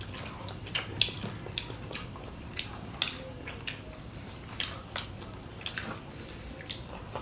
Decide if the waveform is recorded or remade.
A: recorded